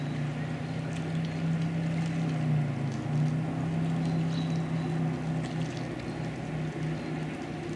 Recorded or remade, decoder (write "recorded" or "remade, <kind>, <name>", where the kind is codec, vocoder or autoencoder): recorded